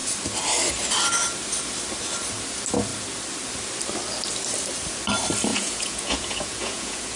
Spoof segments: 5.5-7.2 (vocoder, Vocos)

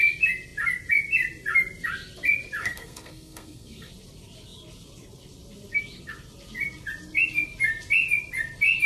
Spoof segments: 2.6-3.9 (codec, SNAC)

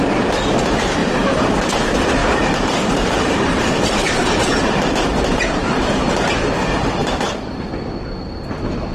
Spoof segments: 1.0-1.7 (vocoder, BigVGAN v2); 2.2-6.2

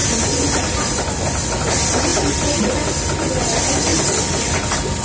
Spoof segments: none